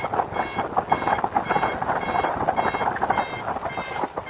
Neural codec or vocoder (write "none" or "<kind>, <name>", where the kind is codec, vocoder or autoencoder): none